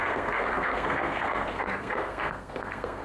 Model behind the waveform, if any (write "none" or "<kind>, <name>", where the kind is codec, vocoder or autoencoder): codec, SNAC